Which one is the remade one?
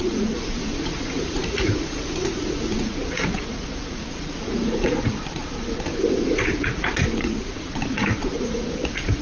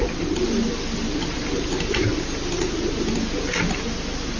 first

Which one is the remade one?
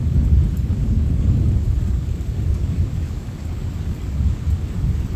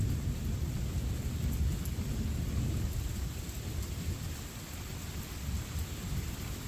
first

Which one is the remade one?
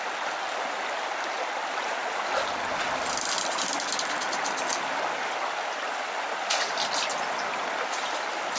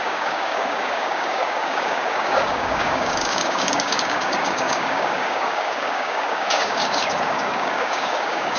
second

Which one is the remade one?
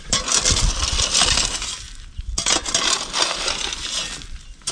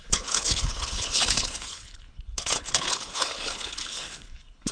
second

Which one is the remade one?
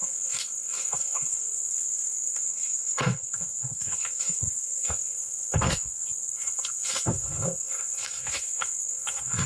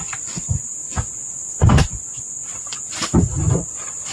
first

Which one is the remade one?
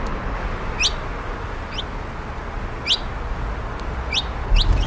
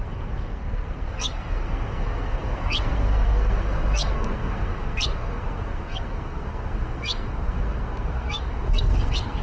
second